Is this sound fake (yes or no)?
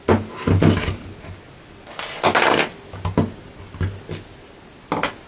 no